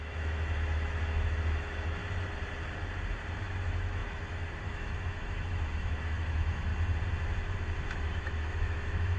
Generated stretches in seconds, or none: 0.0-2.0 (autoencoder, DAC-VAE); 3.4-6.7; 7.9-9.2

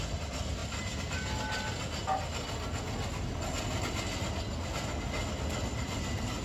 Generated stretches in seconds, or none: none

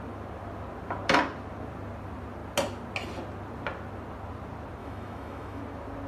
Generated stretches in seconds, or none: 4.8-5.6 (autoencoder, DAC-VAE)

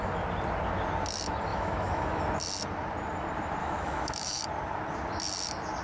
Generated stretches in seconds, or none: 1.5-2.2 (autoencoder, DAC-VAE); 3.6-4.4

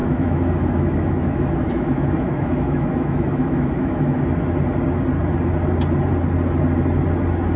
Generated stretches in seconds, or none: 0.0-4.2 (autoencoder, DAC-VAE)

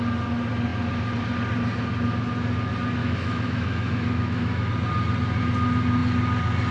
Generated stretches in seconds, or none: 3.0-4.7 (autoencoder, DAC-VAE)

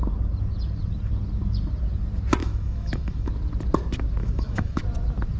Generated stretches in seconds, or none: 2.4-3.3 (autoencoder, DAC-VAE); 4.2-4.8